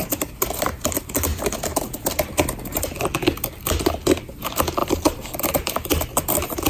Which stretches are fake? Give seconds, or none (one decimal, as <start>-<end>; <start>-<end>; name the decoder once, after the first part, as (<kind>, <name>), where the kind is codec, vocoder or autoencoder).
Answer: 4.8-5.9 (vocoder, BigVGAN v2)